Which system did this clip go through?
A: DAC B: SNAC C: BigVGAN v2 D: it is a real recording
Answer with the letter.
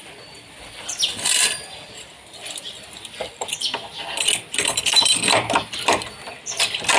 C